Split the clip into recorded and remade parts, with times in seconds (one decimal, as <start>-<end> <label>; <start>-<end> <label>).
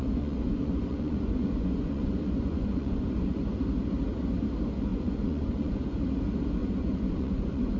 0.0-3.4 remade; 3.4-4.9 recorded; 4.9-5.9 remade; 5.9-6.6 recorded; 6.6-7.8 remade